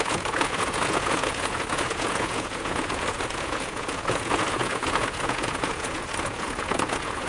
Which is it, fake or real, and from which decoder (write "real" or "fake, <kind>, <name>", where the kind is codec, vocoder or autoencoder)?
fake, vocoder, Vocos